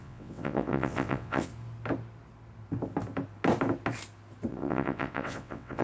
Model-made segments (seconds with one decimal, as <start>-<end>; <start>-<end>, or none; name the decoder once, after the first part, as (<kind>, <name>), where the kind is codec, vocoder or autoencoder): 0.0-1.5 (vocoder, WaveNeXt); 4.5-5.8

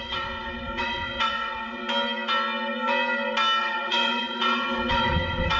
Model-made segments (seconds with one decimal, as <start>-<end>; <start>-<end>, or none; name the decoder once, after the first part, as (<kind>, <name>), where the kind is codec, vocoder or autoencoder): 0.0-1.8 (vocoder, WaveNeXt); 3.6-5.6